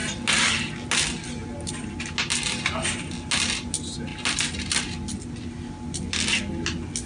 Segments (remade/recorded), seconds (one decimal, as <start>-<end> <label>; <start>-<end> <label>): 0.0-7.1 recorded